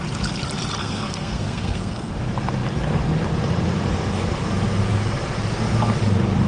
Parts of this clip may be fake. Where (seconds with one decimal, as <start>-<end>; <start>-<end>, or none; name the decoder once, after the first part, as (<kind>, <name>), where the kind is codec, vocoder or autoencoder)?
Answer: 0.8-2.1 (codec, SNAC)